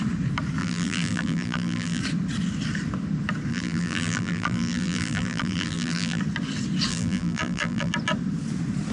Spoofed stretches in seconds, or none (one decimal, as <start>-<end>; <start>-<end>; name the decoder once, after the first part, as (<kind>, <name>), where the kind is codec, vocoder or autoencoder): 0.6-2.0 (vocoder, BigVGAN v2); 3.5-6.2; 6.9-7.9